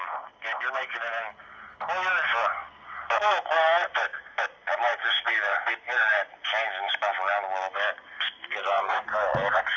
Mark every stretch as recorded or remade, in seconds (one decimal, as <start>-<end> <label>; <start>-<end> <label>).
0.0-9.8 recorded